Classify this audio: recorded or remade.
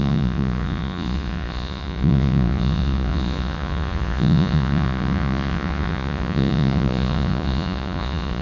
remade